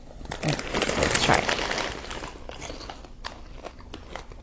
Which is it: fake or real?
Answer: real